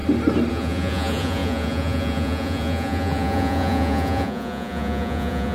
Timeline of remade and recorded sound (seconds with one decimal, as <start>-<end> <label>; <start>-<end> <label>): 0.0-0.5 recorded; 0.5-5.5 remade

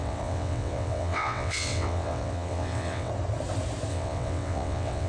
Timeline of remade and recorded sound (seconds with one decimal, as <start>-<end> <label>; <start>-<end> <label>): 0.0-3.1 remade; 3.1-3.9 recorded; 3.9-5.1 remade

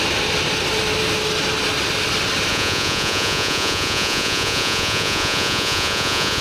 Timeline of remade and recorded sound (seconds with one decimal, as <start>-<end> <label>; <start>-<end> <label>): 0.0-2.5 recorded; 2.5-6.4 remade

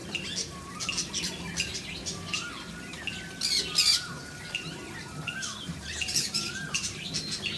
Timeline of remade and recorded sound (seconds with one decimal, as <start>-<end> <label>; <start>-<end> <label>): 0.0-3.9 recorded; 3.9-7.1 remade; 7.1-7.6 recorded

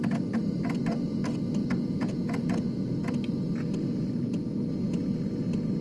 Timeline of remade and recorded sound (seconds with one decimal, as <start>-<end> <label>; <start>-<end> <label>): 0.0-1.6 recorded; 1.6-3.1 remade; 3.1-5.8 recorded

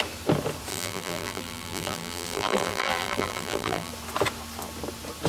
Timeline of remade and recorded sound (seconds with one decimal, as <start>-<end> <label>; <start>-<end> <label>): 0.0-0.7 recorded; 0.7-3.9 remade; 3.9-5.3 recorded

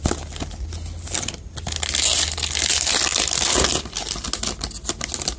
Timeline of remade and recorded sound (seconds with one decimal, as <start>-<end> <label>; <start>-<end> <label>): 0.0-5.4 recorded

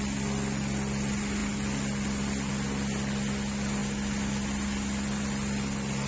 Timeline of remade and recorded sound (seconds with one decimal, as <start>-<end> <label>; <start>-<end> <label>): 0.0-6.1 recorded